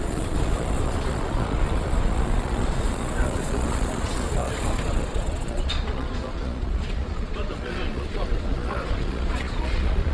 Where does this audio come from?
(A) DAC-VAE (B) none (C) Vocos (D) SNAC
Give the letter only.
C